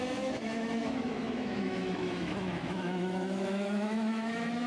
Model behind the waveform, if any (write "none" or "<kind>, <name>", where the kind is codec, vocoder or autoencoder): autoencoder, DAC-VAE